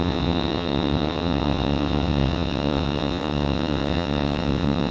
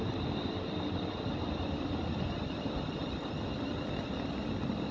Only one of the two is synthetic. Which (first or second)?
first